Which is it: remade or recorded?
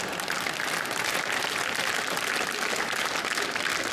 recorded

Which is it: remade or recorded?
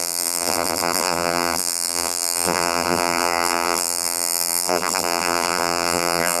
remade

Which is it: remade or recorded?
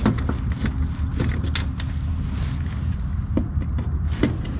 recorded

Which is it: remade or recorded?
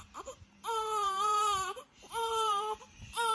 remade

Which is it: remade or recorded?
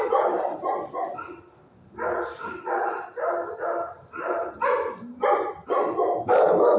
remade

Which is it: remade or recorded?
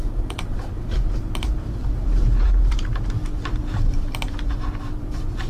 remade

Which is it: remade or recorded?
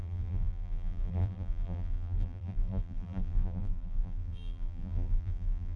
remade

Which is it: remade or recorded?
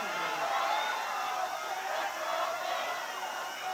recorded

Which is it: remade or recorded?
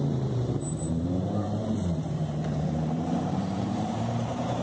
remade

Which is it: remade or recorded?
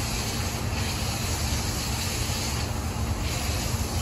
recorded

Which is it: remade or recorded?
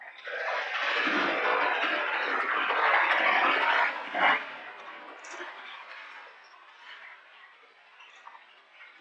recorded